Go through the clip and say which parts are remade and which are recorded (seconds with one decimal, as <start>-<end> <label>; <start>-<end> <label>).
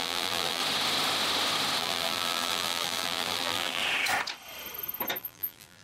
0.0-0.6 remade; 0.6-1.8 recorded; 1.8-3.8 remade; 3.8-5.2 recorded; 5.2-5.8 remade